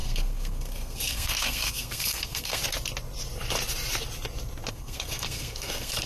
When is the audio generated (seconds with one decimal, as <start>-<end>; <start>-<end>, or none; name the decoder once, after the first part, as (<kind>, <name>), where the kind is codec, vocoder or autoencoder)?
0.0-2.6 (codec, SNAC); 4.7-6.1